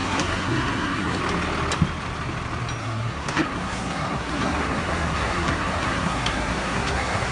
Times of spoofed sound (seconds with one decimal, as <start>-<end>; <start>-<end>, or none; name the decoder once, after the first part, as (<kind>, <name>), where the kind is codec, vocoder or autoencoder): 0.0-1.2 (codec, SNAC); 2.8-7.3